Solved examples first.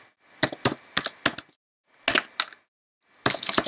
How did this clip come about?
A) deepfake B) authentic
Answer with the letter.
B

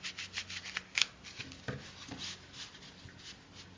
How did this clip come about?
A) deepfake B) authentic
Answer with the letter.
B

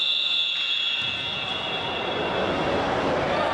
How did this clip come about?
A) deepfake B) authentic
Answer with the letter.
B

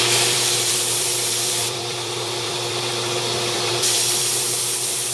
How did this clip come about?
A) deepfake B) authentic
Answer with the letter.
A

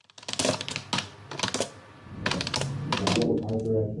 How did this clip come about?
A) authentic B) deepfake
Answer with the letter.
A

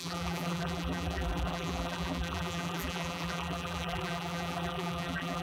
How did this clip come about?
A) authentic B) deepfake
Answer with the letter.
B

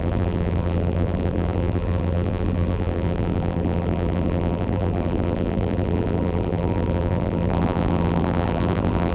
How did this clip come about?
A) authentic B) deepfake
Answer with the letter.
B